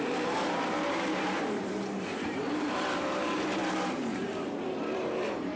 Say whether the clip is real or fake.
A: fake